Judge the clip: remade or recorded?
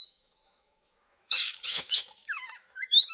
remade